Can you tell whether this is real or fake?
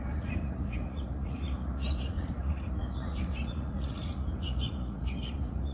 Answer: fake